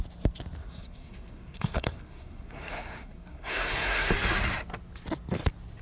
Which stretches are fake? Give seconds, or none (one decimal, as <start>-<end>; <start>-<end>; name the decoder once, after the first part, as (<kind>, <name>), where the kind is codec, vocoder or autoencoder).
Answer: 0.6-4.1 (codec, SNAC)